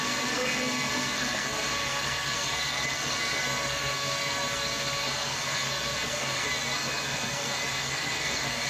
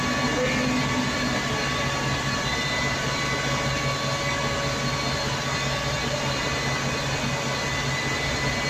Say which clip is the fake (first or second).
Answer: first